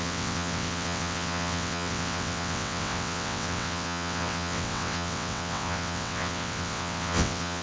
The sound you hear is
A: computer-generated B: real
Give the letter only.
A